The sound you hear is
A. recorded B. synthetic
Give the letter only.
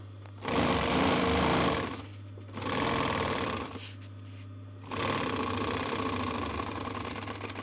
A